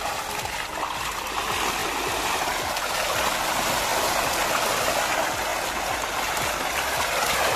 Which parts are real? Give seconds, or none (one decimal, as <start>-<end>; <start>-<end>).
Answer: 0.0-1.8; 2.7-3.9; 4.9-5.5; 6.3-7.6